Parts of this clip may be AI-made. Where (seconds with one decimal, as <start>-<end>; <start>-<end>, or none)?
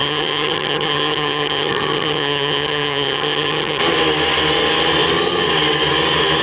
0.0-3.8